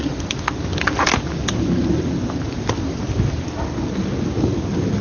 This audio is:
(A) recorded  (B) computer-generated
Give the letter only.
A